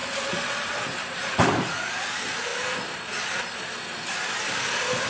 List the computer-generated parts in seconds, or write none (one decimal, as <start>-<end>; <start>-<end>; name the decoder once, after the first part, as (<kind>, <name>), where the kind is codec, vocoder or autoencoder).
0.0-2.0 (vocoder, BigVGAN v2)